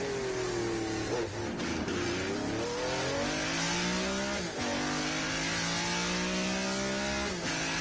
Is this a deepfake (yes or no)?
no